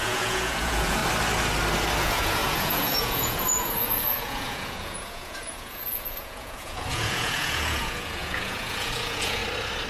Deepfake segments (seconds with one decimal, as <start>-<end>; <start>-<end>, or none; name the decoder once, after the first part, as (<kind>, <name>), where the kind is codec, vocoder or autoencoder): 0.0-1.0 (vocoder, Vocos); 2.0-9.4